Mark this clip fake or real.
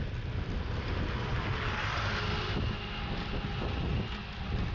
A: real